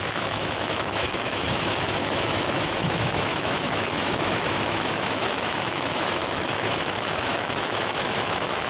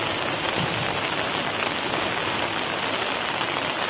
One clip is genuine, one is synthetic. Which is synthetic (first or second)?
first